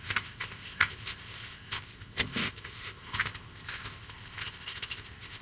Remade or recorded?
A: remade